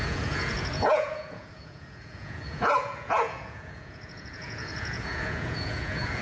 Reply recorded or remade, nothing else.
remade